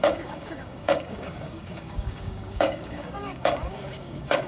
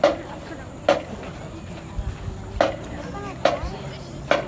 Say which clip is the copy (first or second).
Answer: first